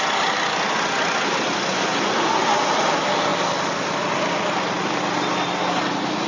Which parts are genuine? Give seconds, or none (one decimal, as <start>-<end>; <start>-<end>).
0.0-6.3